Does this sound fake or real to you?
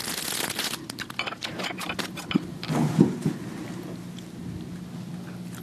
real